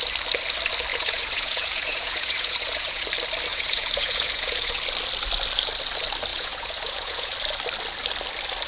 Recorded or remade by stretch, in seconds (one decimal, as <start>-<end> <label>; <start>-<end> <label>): 0.0-0.9 recorded; 0.9-3.0 remade; 3.0-3.5 recorded; 3.5-4.7 remade; 4.7-6.3 recorded; 6.3-7.3 remade; 7.3-8.7 recorded